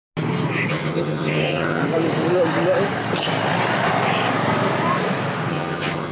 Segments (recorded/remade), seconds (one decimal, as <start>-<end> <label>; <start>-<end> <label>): 0.0-0.7 recorded; 0.7-1.8 remade; 1.8-5.5 recorded; 5.5-6.1 remade